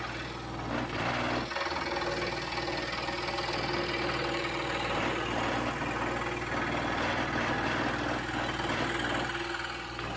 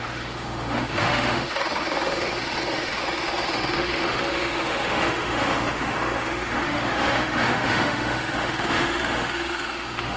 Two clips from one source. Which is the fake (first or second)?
second